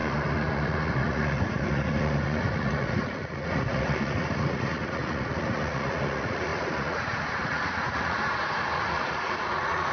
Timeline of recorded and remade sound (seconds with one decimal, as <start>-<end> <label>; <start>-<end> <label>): 0.0-9.9 remade